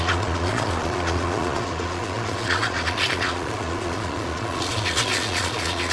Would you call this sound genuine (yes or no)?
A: no